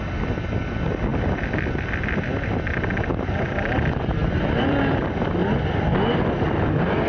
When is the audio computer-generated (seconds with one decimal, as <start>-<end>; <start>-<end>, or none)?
1.1-4.8; 5.4-6.2

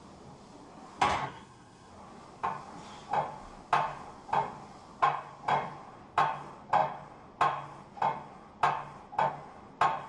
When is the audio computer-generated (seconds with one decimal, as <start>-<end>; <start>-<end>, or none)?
1.2-1.9

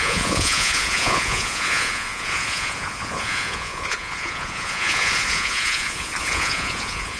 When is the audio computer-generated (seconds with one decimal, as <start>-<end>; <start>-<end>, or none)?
0.0-7.2

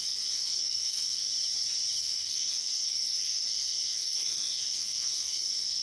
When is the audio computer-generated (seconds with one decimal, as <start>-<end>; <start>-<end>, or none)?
0.0-1.3; 2.0-5.8

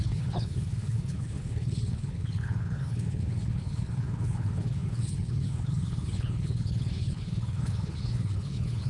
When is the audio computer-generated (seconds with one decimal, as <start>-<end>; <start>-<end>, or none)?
0.0-8.9